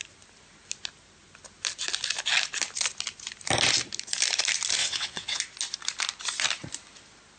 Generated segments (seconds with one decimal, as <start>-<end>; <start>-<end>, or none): 4.8-5.4